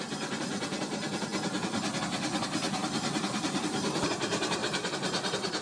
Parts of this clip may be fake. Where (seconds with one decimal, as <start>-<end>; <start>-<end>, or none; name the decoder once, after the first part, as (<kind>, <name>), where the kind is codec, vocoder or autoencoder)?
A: 2.8-4.0 (vocoder, BigVGAN v2); 4.6-5.6